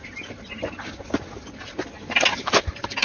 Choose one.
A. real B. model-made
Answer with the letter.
A